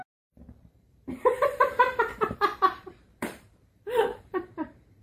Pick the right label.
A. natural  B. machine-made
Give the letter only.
B